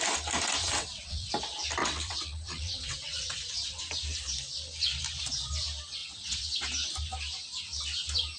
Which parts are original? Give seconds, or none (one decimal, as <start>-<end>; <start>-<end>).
0.0-0.6; 1.3-1.8; 3.8-6.0; 6.6-8.4